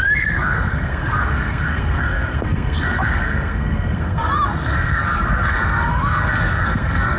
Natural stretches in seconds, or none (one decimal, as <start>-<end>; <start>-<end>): none

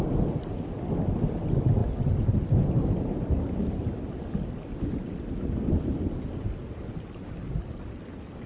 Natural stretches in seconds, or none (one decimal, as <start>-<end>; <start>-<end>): 0.0-8.5